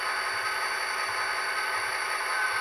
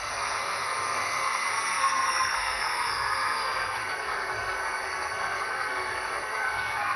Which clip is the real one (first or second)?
first